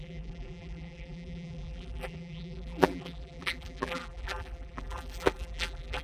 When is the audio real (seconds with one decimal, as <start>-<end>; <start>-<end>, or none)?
none